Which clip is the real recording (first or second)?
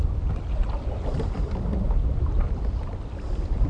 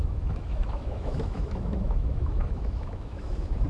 first